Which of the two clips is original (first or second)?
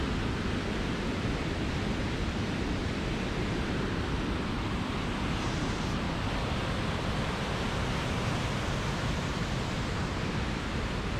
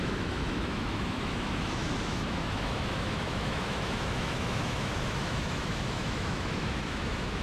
first